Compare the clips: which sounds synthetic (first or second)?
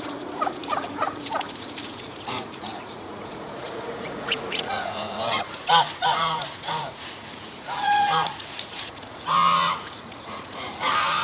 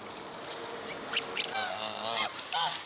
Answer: first